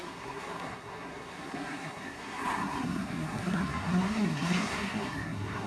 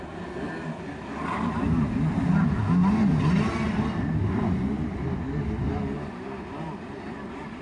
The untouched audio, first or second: second